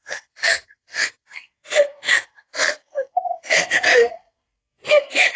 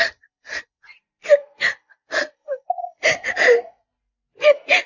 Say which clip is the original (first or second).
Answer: second